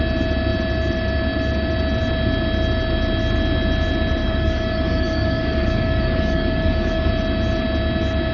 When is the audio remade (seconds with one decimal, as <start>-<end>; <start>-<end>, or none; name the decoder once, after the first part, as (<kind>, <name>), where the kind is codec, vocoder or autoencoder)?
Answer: 4.2-7.1 (codec, DAC)